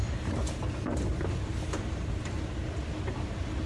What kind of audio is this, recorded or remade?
recorded